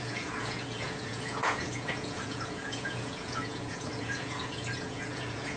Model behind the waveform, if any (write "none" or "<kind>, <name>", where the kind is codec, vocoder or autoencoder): vocoder, Vocos